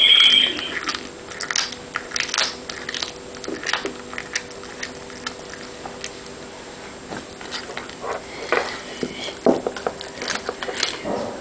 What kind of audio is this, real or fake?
real